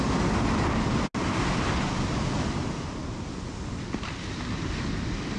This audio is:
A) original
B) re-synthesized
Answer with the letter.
A